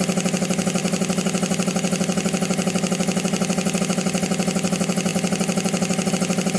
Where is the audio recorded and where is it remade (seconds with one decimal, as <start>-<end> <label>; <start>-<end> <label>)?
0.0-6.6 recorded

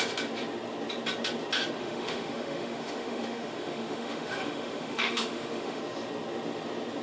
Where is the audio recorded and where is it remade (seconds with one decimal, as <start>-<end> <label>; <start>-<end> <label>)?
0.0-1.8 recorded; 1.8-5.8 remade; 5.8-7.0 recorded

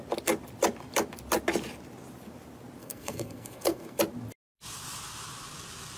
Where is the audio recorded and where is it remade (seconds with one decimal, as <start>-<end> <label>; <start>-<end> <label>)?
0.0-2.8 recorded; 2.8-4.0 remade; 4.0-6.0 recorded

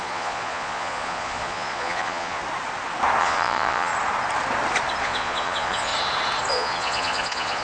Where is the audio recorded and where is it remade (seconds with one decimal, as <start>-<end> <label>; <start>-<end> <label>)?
0.0-2.4 remade; 2.4-3.2 recorded; 3.2-3.9 remade; 3.9-5.0 recorded; 5.0-5.9 remade; 5.9-6.5 recorded; 6.5-7.6 remade

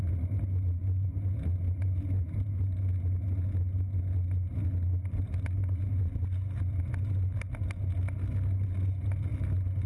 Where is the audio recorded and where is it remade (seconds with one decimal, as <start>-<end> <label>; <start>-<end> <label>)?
0.0-9.9 recorded

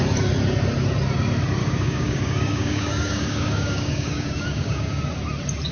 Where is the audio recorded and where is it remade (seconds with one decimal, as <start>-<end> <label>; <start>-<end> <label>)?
0.0-1.6 recorded; 1.6-5.0 remade; 5.0-5.7 recorded